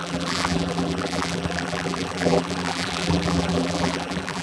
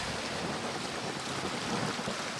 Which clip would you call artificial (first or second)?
first